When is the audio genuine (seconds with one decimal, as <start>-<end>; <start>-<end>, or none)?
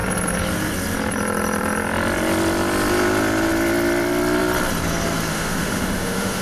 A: 0.0-5.3